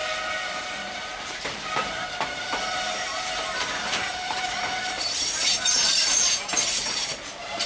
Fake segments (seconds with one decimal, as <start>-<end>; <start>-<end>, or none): 0.5-7.7